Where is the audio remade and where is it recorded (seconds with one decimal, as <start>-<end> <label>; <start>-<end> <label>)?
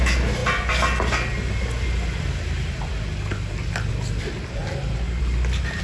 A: 0.0-5.8 recorded